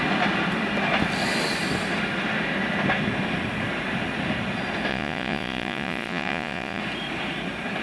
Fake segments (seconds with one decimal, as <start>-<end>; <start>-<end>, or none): 4.9-6.8